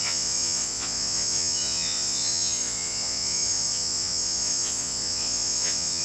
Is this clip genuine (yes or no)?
no